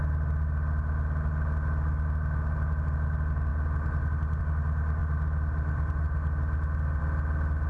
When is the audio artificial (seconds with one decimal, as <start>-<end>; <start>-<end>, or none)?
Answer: none